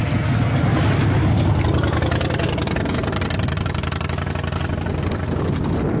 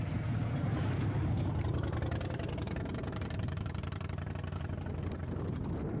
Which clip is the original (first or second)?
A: first